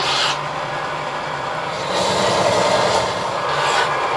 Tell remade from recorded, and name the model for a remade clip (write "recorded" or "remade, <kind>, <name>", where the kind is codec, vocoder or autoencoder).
remade, vocoder, BigVGAN v2